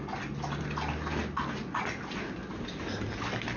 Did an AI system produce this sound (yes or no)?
no